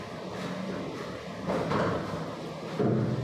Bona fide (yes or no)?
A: yes